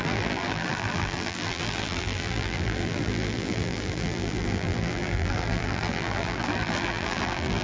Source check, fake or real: fake